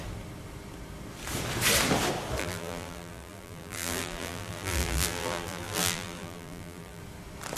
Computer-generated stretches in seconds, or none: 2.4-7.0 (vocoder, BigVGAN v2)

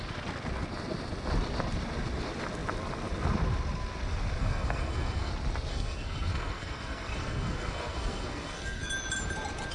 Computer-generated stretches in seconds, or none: 4.4-5.3 (codec, SNAC); 5.7-8.9